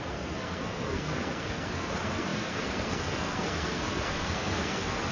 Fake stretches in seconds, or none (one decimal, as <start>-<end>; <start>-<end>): 0.0-5.1